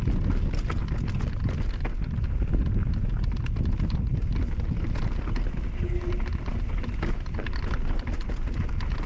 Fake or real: real